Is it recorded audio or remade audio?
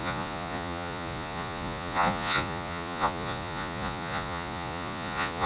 remade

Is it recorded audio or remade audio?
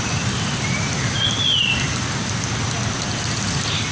recorded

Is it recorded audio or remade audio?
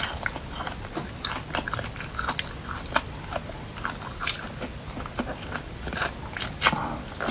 recorded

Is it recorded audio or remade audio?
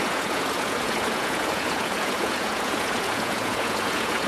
remade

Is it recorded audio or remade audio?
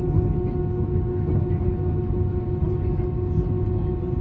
recorded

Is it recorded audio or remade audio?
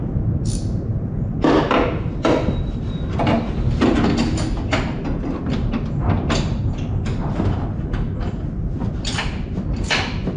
recorded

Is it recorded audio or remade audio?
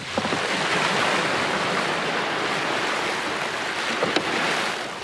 recorded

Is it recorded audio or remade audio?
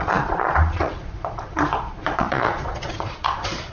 remade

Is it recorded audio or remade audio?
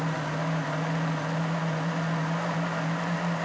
recorded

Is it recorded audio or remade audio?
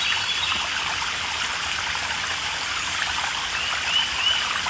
recorded